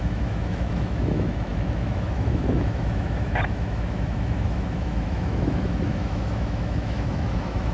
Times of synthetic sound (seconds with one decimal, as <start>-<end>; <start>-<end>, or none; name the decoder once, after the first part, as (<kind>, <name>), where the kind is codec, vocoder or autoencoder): 0.0-7.7 (autoencoder, DAC-VAE)